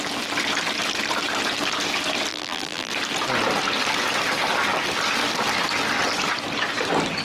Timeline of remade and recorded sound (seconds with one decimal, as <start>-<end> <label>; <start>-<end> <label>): 0.0-2.3 recorded; 2.3-2.9 remade; 2.9-7.2 recorded